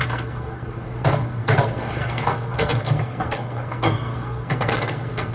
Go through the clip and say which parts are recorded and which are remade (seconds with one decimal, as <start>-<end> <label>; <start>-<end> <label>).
0.0-5.3 remade